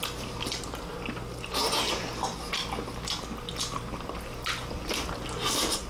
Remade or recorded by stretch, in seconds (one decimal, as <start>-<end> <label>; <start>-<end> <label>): 0.0-5.9 recorded